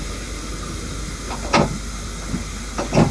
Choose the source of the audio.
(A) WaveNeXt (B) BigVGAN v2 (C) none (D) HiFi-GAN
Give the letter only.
C